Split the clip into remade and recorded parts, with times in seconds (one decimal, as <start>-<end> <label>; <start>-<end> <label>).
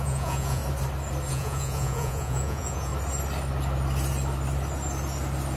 0.0-0.6 remade; 0.6-1.3 recorded; 1.3-2.9 remade; 2.9-5.6 recorded